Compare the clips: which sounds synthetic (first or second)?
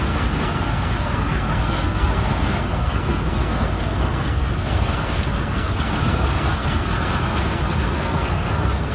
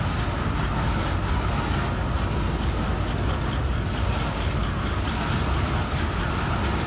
first